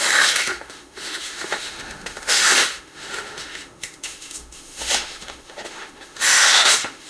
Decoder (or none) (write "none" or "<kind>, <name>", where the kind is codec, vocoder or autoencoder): autoencoder, DAC-VAE